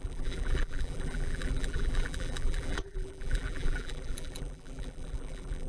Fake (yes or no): yes